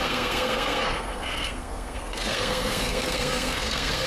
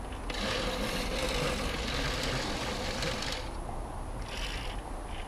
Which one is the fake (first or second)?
first